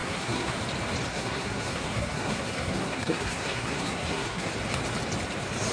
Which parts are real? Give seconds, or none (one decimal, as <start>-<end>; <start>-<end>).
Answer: 0.6-1.1; 4.5-5.7